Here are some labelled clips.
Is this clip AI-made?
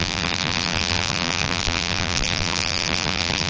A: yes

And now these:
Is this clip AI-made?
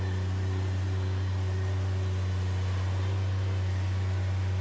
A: no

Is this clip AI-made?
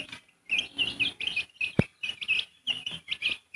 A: no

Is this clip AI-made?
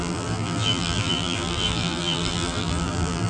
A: yes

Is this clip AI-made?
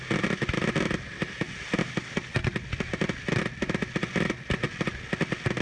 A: no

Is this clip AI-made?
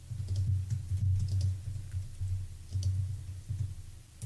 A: no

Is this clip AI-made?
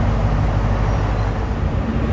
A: no